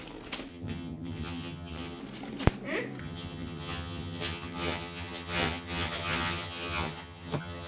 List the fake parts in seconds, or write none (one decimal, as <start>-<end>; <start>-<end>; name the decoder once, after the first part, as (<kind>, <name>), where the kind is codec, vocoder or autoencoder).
0.5-2.0 (vocoder, HiFi-GAN); 3.0-7.7